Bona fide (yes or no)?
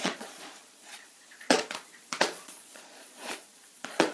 no